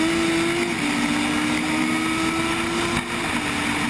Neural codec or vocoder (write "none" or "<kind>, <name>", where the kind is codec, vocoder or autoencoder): none